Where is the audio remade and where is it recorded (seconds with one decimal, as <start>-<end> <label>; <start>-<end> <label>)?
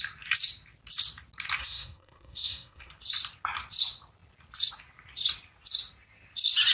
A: 0.0-1.6 recorded; 1.6-2.9 remade; 2.9-6.7 recorded